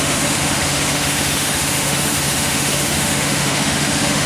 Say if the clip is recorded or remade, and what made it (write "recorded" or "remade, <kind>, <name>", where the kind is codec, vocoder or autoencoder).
remade, autoencoder, DAC-VAE